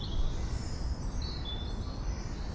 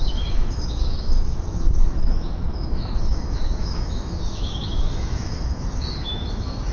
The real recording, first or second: first